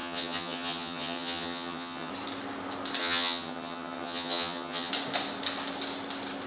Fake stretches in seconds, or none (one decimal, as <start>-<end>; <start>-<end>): 0.0-2.1; 3.0-4.9